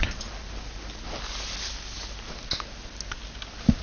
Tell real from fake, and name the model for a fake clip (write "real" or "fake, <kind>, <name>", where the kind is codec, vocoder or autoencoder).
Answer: real